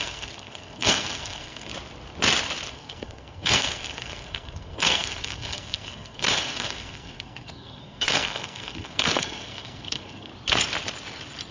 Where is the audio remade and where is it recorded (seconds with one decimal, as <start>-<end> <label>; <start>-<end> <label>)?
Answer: 0.0-1.7 remade; 1.7-2.7 recorded; 2.7-10.3 remade; 10.3-11.5 recorded